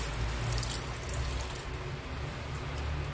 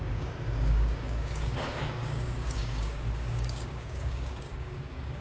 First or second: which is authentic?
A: first